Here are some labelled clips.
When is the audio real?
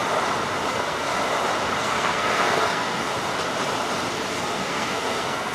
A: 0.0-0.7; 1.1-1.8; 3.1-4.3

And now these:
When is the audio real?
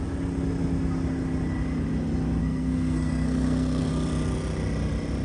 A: 0.0-2.4; 3.9-5.2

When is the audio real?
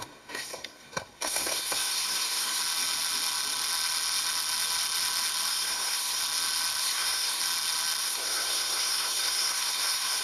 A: 2.6-5.5; 6.2-6.8; 7.4-8.0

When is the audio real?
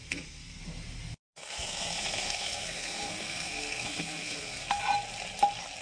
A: 0.6-1.3; 4.8-5.8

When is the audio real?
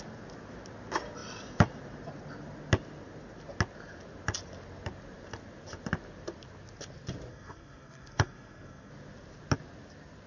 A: 0.0-7.3; 8.9-10.3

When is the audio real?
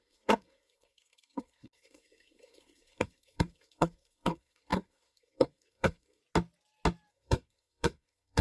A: 6.2-7.1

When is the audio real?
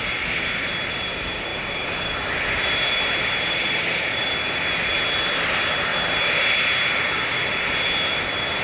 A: 0.0-8.6